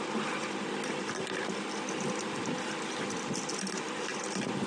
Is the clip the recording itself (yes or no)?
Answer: yes